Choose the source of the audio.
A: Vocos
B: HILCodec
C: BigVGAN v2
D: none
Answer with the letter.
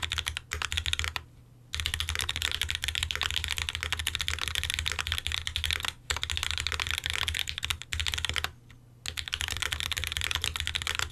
D